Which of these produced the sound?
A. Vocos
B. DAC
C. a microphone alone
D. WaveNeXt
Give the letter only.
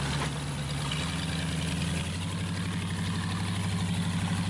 C